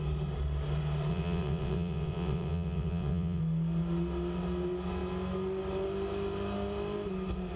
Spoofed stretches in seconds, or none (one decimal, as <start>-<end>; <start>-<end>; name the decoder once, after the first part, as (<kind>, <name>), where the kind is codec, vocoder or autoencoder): 1.1-3.4 (vocoder, WaveNeXt)